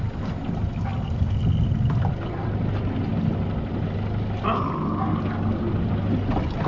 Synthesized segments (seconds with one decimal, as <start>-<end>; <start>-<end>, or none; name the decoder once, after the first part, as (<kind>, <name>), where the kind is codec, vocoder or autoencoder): none

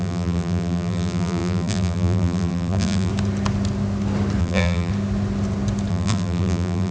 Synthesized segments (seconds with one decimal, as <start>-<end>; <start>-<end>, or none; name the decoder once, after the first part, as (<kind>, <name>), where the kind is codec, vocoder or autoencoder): 0.0-3.1 (vocoder, BigVGAN v2); 4.4-4.9; 5.9-6.9